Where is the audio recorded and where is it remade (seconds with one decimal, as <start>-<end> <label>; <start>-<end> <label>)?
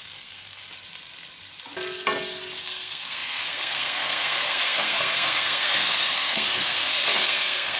0.0-0.6 remade; 0.6-2.6 recorded; 2.6-7.8 remade